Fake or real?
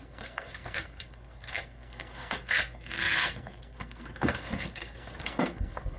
fake